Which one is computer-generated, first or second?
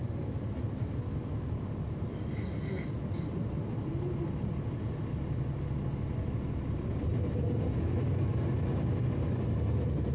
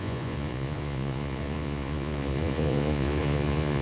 second